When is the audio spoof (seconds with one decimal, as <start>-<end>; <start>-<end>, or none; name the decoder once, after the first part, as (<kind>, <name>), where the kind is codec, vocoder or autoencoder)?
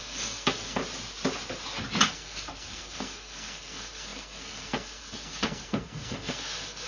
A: 0.0-0.8 (codec, SNAC); 2.1-6.9